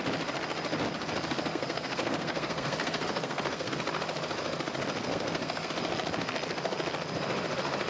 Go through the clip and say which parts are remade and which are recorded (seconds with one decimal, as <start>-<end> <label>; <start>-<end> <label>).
0.0-1.5 recorded; 1.5-3.7 remade; 3.7-5.1 recorded; 5.1-5.7 remade; 5.7-7.9 recorded